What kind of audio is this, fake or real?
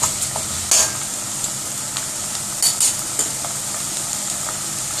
real